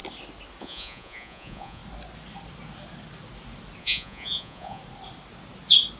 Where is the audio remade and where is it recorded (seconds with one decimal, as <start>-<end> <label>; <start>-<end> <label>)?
0.0-0.6 recorded; 0.6-1.8 remade; 1.8-3.8 recorded; 3.8-4.8 remade; 4.8-6.0 recorded